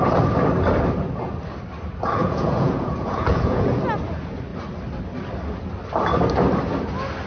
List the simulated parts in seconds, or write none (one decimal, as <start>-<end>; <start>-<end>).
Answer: 2.2-3.8